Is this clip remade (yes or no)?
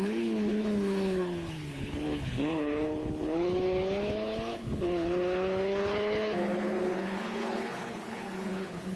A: yes